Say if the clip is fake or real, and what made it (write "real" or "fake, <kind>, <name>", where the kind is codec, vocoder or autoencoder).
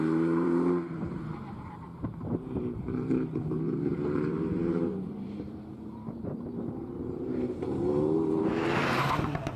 fake, vocoder, BigVGAN v2